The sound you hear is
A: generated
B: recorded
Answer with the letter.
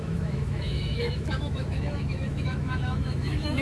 A